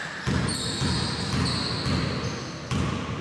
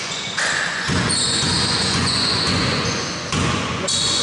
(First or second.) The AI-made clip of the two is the second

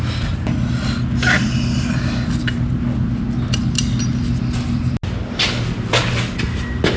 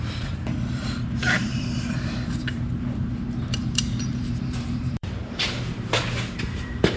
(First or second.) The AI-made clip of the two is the second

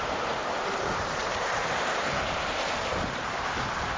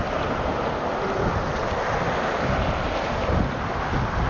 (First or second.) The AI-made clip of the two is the first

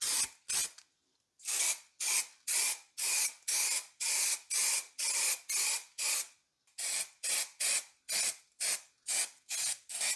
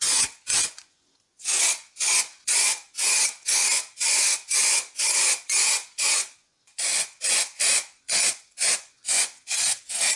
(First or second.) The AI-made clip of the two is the second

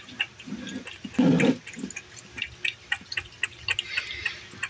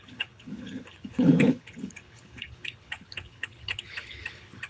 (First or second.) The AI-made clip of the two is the second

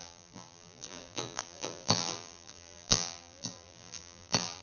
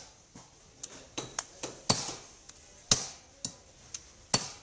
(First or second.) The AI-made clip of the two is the first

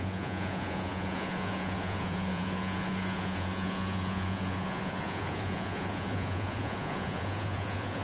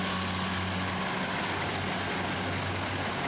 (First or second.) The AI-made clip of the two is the first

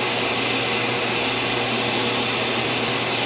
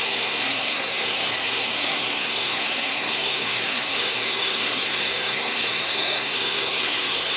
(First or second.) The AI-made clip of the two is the second